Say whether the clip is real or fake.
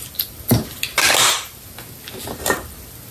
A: real